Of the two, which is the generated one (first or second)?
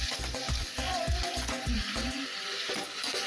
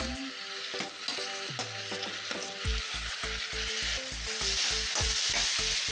first